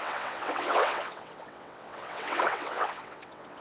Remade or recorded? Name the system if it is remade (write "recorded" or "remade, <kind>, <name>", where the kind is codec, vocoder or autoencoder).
remade, vocoder, WaveNeXt